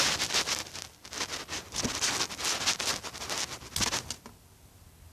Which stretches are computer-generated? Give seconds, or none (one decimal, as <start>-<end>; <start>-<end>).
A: none